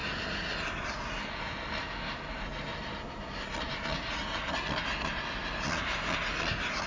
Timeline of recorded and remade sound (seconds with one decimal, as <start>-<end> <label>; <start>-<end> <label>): 0.0-6.9 recorded